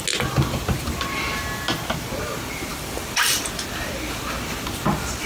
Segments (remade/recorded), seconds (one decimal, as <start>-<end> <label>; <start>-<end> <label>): 0.0-5.3 recorded